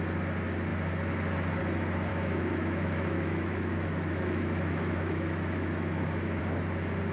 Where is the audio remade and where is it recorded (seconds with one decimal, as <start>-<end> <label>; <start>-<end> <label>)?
0.0-2.1 recorded; 2.1-6.4 remade; 6.4-7.1 recorded